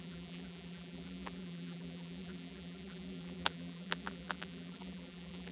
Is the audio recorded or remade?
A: remade